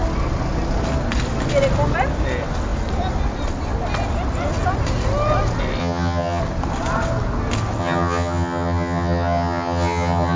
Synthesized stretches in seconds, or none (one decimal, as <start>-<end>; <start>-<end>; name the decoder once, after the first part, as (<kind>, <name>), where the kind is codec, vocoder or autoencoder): 5.8-6.4 (vocoder, HiFi-GAN); 7.8-10.4